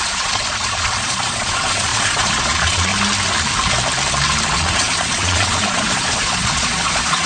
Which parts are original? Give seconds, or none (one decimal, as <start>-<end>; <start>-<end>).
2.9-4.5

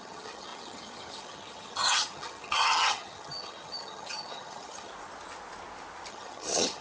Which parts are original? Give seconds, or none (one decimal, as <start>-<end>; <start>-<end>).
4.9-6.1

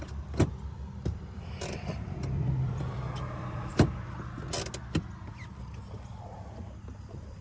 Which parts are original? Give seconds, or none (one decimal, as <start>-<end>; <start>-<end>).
3.7-7.4